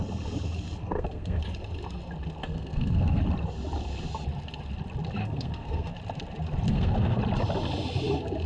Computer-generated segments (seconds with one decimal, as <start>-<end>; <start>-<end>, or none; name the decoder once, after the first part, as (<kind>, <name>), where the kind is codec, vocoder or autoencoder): 0.8-1.4 (codec, SNAC); 2.4-3.2; 5.2-5.9; 6.7-7.2